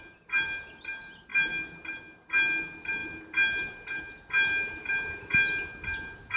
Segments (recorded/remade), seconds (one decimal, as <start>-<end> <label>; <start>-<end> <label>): 0.0-6.4 recorded